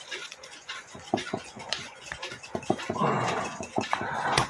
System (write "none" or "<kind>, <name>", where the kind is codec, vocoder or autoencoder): vocoder, Vocos